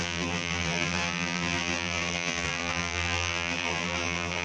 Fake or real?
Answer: fake